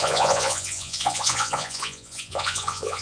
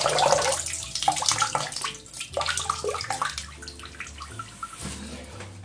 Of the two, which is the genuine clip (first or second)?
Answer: second